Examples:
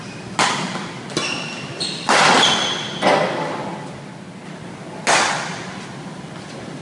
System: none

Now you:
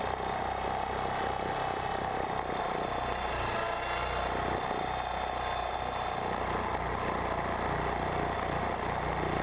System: none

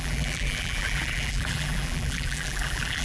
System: vocoder, BigVGAN v2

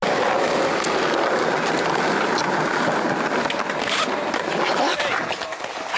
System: none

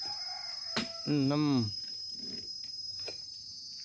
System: none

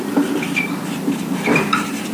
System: none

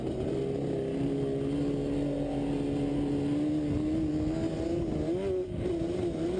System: none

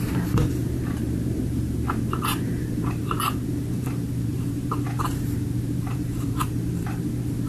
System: vocoder, BigVGAN v2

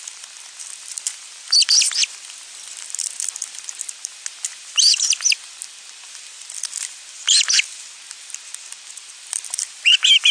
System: none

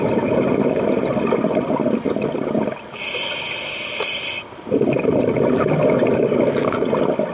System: none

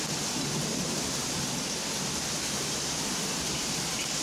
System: vocoder, BigVGAN v2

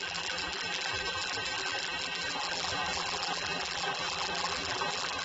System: vocoder, BigVGAN v2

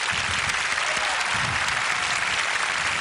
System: none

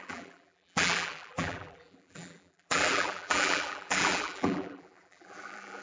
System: vocoder, BigVGAN v2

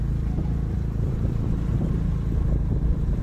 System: vocoder, BigVGAN v2